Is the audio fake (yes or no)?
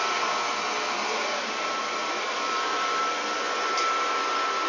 yes